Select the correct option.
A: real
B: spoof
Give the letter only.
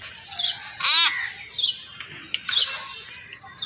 A